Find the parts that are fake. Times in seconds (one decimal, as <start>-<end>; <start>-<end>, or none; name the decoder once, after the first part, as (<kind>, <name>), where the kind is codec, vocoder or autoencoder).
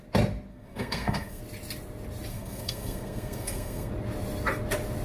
0.5-1.4 (codec, SNAC); 2.3-3.9